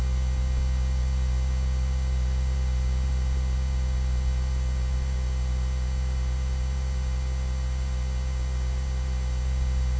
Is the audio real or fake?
real